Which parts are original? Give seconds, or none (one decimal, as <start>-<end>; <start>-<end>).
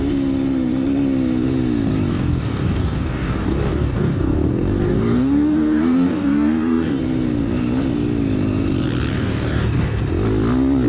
0.0-2.1; 7.0-9.1; 10.0-10.9